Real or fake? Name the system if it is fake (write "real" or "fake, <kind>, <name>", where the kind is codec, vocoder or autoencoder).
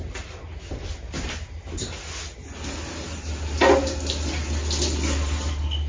real